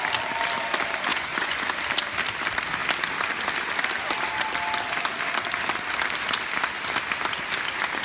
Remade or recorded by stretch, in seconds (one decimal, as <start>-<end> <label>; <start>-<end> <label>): 0.0-1.1 recorded; 1.1-1.6 remade; 1.6-8.0 recorded